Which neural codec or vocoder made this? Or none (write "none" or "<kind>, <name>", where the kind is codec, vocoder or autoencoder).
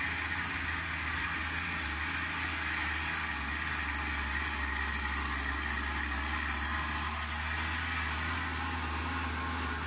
none